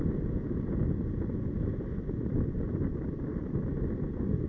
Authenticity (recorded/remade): recorded